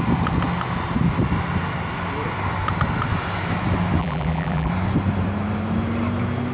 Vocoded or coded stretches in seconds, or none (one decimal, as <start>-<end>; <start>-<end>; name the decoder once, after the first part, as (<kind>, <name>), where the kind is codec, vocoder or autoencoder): 4.0-4.7 (vocoder, BigVGAN v2)